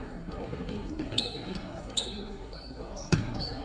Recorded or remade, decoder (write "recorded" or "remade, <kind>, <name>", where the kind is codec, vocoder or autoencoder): remade, codec, SNAC